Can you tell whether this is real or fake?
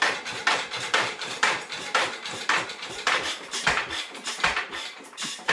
fake